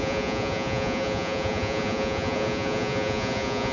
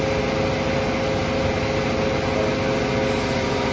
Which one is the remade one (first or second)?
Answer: first